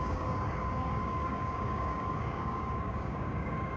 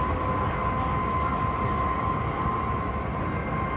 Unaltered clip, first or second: second